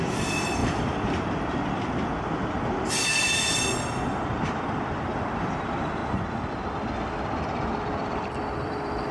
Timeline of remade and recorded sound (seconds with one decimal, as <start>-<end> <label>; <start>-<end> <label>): 0.0-0.6 remade; 0.6-4.2 recorded; 4.2-6.0 remade; 6.0-6.5 recorded; 6.5-9.1 remade